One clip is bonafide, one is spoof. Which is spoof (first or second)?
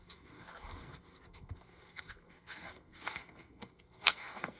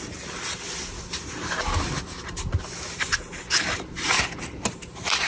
first